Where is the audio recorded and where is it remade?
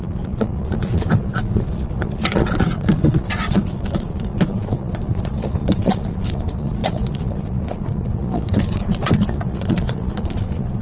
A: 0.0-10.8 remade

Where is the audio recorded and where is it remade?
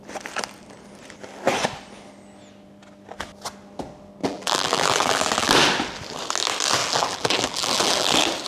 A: 0.0-4.2 recorded; 4.2-5.5 remade; 5.5-6.8 recorded; 6.8-8.1 remade; 8.1-8.5 recorded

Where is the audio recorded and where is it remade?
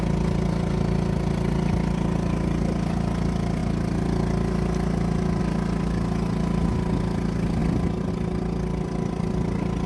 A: 0.0-9.9 recorded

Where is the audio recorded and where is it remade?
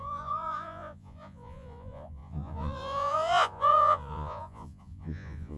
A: 0.0-5.6 remade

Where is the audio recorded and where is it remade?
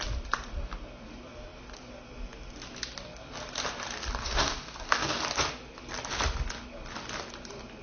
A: 0.0-4.2 recorded; 4.2-5.2 remade; 5.2-7.8 recorded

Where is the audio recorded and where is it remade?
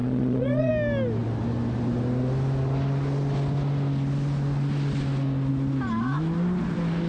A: 0.0-0.7 remade; 0.7-7.1 recorded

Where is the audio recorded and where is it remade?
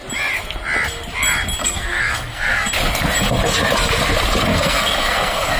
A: 0.0-1.6 recorded; 1.6-2.7 remade; 2.7-4.5 recorded; 4.5-5.6 remade